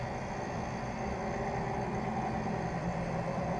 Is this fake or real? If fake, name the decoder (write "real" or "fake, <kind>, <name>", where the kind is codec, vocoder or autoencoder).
fake, vocoder, BigVGAN v2